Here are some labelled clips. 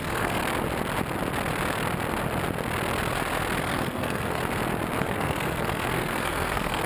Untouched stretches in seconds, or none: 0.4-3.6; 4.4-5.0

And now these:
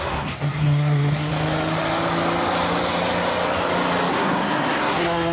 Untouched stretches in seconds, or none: 1.3-4.1

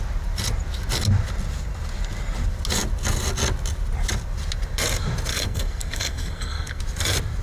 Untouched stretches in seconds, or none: 0.0-5.3; 6.8-7.4

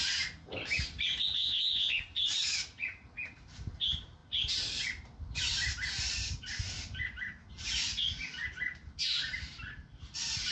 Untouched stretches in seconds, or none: 0.0-1.4; 2.0-10.5

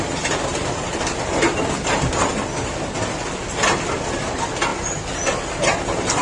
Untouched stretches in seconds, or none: 0.0-6.2

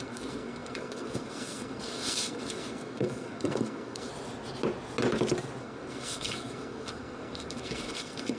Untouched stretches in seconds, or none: 4.1-5.6

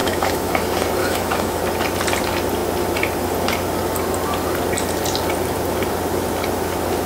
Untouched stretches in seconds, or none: 0.5-1.0; 1.6-7.1